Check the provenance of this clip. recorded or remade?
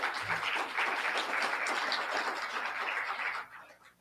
recorded